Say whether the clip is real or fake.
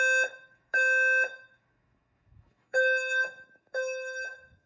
fake